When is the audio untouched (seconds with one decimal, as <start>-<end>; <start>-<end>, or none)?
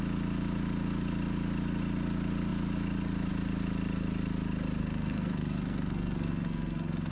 0.0-4.8